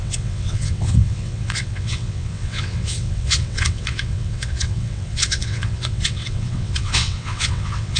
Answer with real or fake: fake